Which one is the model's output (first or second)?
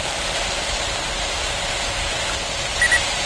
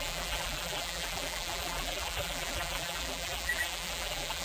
second